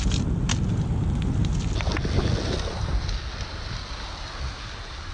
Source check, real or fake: real